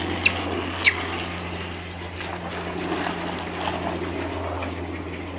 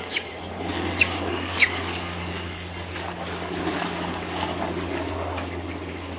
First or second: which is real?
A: first